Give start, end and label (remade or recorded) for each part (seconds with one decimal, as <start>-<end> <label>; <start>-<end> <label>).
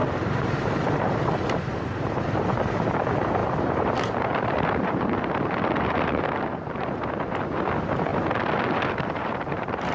0.0-8.1 remade; 8.1-8.9 recorded; 8.9-9.9 remade